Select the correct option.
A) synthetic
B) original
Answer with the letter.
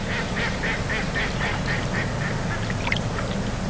B